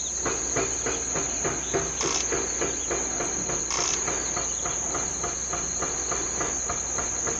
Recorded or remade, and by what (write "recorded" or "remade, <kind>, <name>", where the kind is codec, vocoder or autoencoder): recorded